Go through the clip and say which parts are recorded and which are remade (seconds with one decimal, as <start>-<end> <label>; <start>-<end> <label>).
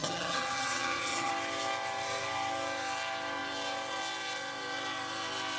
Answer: 0.0-1.3 remade; 1.3-5.6 recorded